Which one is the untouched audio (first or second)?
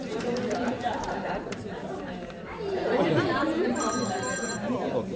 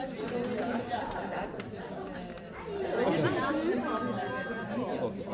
second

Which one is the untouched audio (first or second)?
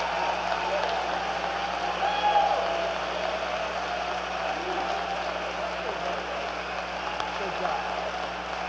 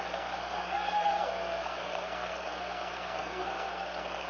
first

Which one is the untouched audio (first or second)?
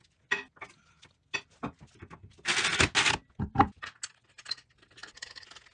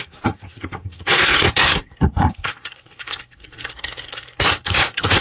first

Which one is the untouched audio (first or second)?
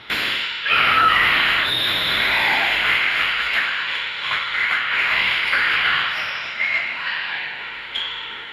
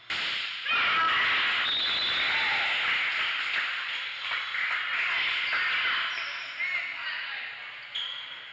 second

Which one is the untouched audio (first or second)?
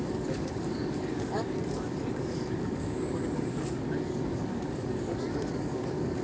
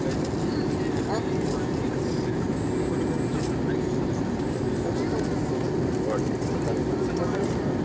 second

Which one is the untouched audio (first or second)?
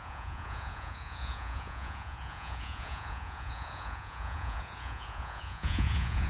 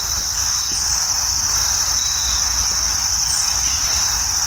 second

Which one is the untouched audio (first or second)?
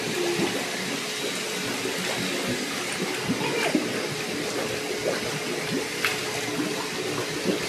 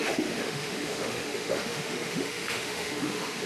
first